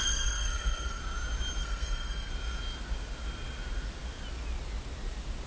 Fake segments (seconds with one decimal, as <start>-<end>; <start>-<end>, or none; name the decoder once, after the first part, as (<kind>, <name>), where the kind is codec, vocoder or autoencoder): 0.0-1.0 (codec, SNAC); 1.6-2.3